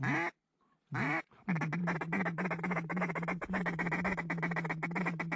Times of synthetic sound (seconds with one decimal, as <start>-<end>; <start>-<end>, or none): none